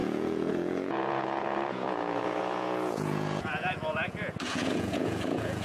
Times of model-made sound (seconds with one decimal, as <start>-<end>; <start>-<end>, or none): 0.0-5.6